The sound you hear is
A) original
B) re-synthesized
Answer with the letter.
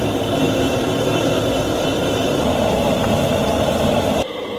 A